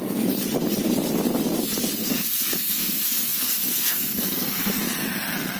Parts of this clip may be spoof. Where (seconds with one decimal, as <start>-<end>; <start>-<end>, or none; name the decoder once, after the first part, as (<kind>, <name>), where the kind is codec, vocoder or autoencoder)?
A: 2.0-4.8 (codec, SNAC)